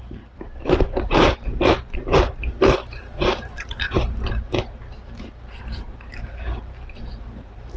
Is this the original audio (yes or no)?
no